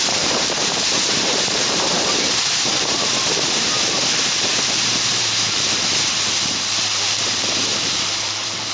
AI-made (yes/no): yes